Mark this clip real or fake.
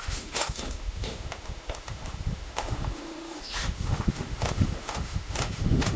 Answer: fake